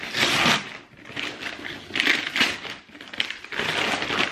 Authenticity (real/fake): real